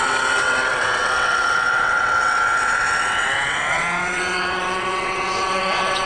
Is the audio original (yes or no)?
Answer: no